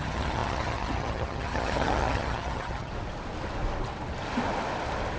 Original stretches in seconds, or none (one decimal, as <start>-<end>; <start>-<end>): 2.9-5.2